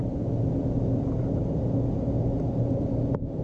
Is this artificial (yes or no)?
no